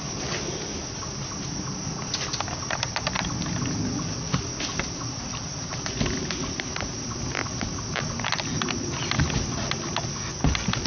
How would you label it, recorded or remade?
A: recorded